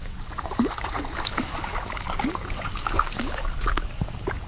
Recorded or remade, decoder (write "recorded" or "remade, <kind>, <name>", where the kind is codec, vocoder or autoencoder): remade, codec, DAC